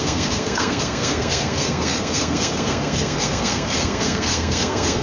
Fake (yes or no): yes